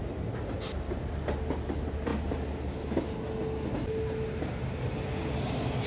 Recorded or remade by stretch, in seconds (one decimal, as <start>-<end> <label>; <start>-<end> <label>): 0.0-5.9 recorded